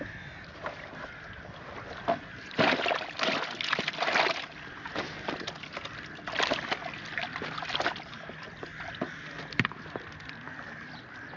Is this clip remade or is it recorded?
recorded